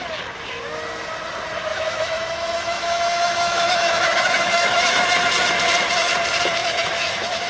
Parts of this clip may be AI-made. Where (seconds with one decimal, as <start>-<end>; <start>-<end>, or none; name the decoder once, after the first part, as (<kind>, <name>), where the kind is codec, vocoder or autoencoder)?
1.7-5.1 (autoencoder, DAC-VAE); 6.6-7.5